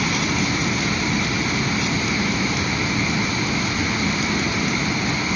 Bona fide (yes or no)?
yes